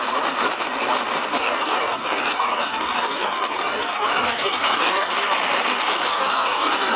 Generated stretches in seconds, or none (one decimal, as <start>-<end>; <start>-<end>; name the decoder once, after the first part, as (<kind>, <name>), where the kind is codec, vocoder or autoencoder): 1.4-5.1 (codec, DAC); 6.1-7.0